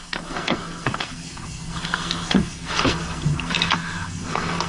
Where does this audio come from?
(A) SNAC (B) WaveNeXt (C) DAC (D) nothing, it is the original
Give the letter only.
A